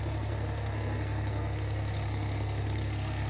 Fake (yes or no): yes